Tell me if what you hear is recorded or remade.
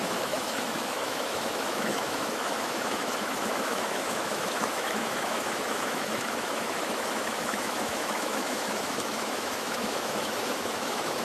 remade